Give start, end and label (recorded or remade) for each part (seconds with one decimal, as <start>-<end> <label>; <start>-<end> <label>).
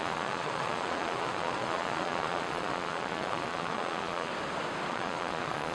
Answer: 0.0-4.3 remade; 4.3-4.9 recorded; 4.9-5.7 remade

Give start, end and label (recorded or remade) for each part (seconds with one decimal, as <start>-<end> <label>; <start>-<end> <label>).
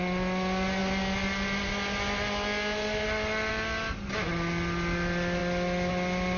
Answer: 0.0-6.4 recorded